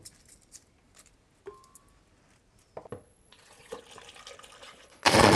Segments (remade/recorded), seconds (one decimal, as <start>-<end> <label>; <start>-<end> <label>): 0.0-2.9 recorded; 2.9-3.8 remade; 3.8-4.6 recorded; 4.6-5.4 remade